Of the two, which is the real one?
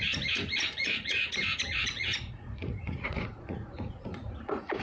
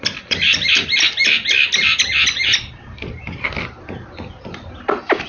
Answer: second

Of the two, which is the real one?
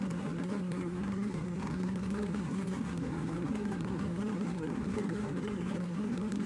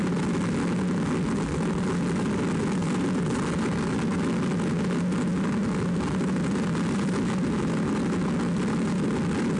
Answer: second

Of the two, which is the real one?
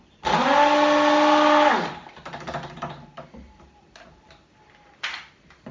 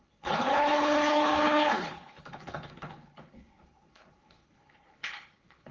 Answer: first